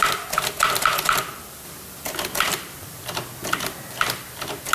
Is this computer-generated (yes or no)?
yes